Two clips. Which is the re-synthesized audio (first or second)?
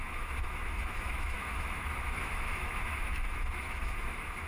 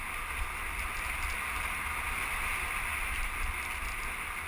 first